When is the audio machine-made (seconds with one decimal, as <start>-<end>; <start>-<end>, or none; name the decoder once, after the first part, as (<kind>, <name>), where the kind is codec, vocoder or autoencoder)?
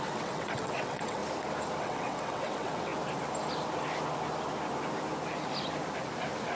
0.0-1.2 (vocoder, WaveNeXt); 1.8-2.9